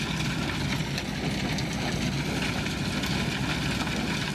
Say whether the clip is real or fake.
real